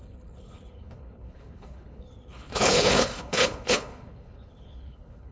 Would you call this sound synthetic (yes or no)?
yes